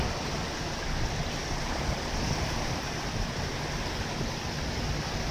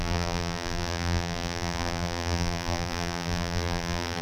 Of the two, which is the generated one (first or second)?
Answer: second